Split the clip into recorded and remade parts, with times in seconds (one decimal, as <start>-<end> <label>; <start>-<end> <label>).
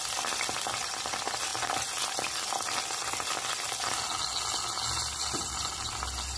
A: 0.0-6.4 recorded